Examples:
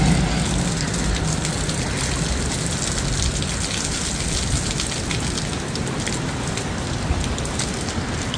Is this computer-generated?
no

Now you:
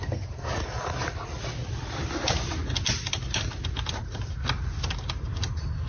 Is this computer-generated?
no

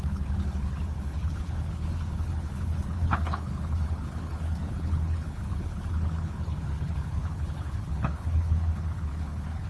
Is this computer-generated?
yes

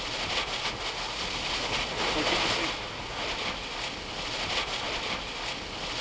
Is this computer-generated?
no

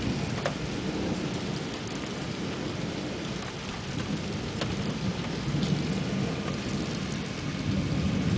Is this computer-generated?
no